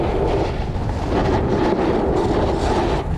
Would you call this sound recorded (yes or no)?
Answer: yes